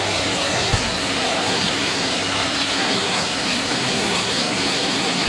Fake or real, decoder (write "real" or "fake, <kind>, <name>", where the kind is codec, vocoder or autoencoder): fake, codec, SNAC